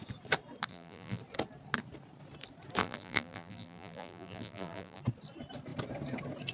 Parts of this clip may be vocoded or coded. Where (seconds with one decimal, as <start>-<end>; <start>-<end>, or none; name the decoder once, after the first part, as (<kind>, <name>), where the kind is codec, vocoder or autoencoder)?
0.7-1.2 (vocoder, BigVGAN v2); 2.8-5.0